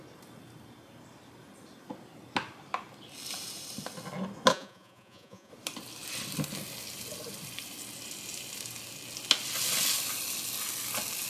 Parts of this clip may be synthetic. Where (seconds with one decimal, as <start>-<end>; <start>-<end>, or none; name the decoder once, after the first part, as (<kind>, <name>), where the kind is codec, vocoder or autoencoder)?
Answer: 4.5-5.5 (vocoder, Vocos)

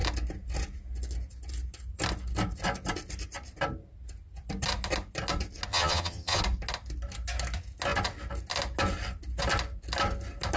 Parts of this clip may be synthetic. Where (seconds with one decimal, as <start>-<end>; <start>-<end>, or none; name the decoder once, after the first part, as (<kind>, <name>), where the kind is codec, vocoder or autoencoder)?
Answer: 5.7-6.4 (vocoder, HiFi-GAN)

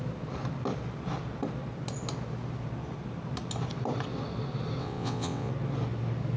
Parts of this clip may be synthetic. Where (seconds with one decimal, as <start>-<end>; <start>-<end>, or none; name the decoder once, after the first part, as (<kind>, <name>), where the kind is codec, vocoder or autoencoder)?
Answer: 4.8-5.5 (vocoder, WaveNeXt)

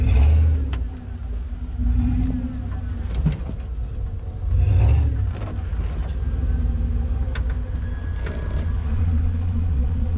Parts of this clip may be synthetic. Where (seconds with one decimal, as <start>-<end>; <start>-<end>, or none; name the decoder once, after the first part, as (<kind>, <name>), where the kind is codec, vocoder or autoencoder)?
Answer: 8.8-10.2 (vocoder, Vocos)

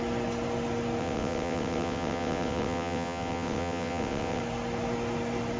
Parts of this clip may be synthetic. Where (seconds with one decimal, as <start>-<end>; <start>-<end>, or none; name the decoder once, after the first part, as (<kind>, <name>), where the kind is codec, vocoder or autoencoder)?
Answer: 1.0-4.4 (vocoder, WaveNeXt)

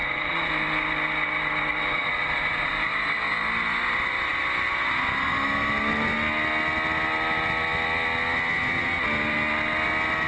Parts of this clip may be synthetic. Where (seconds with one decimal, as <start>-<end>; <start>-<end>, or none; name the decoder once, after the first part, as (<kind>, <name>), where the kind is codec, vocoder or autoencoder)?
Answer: 0.0-0.5 (vocoder, Vocos); 1.9-2.7